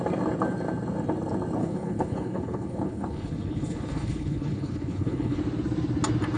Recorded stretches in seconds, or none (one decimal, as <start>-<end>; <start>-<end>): 0.0-1.6; 5.4-6.4